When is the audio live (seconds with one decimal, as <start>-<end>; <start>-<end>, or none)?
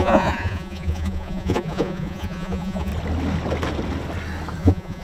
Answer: 2.9-4.6